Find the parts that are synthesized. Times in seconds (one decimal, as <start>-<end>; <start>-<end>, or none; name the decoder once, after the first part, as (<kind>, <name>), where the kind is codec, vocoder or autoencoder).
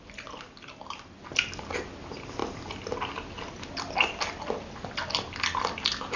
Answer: none